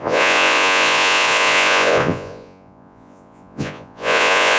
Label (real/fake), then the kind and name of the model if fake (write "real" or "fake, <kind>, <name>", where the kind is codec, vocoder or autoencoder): fake, vocoder, Vocos